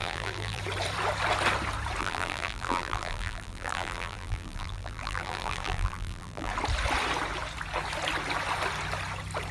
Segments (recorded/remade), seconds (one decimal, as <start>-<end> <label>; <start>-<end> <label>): 0.0-0.6 remade; 0.6-2.0 recorded; 2.0-6.5 remade; 6.5-9.5 recorded